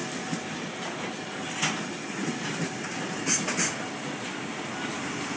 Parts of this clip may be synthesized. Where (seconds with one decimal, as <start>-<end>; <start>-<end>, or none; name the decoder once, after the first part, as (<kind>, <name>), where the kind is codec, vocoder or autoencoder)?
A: none